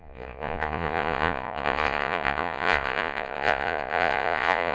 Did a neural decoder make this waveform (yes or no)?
yes